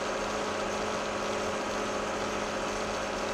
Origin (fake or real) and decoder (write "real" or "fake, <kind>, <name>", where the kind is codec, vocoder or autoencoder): real